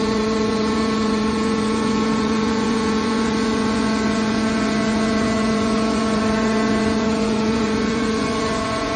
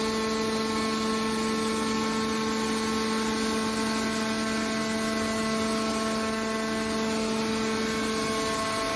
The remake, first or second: first